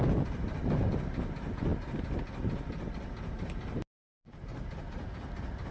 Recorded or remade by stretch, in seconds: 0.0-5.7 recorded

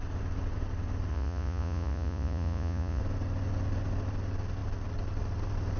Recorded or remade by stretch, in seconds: 0.0-1.1 recorded; 1.1-3.0 remade; 3.0-5.8 recorded

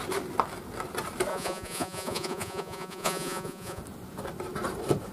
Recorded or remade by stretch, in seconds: 0.0-1.3 recorded; 1.3-3.8 remade; 3.8-5.1 recorded

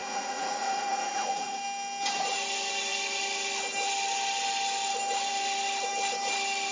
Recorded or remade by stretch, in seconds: 0.0-1.6 remade; 1.6-6.7 recorded

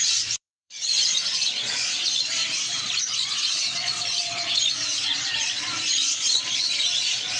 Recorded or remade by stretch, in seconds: 0.0-2.4 remade; 2.4-3.0 recorded; 3.0-7.4 remade

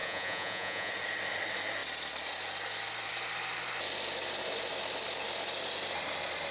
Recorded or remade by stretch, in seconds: 0.0-0.9 remade; 0.9-6.5 recorded

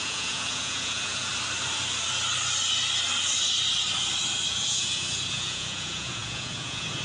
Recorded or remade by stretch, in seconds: 0.0-1.3 remade; 1.3-4.5 recorded; 4.5-7.0 remade